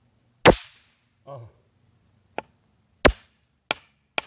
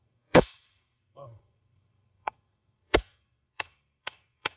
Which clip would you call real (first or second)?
first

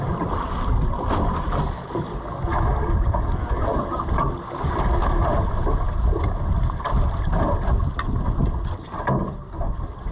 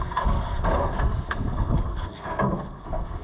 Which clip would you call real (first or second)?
first